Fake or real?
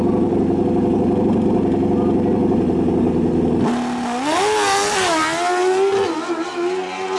real